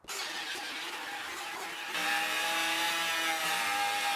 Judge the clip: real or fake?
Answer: real